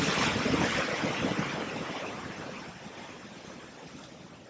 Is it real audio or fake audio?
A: real